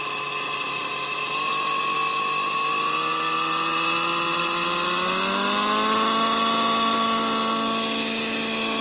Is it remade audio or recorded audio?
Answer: recorded